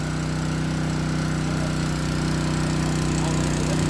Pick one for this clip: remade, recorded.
recorded